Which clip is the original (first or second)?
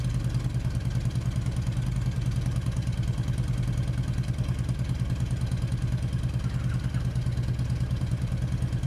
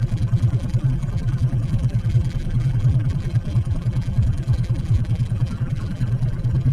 first